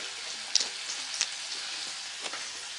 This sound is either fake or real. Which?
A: real